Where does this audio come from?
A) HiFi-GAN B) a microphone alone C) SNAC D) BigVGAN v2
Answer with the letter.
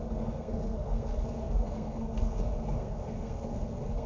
C